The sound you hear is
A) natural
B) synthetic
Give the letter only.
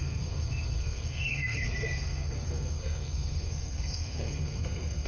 B